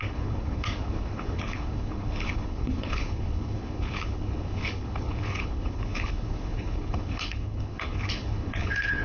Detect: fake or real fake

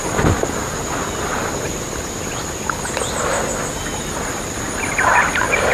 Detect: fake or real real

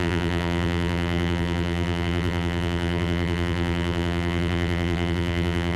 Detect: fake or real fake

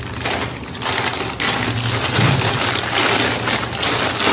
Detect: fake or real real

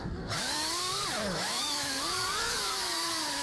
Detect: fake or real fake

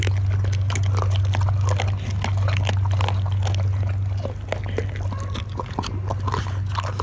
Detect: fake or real real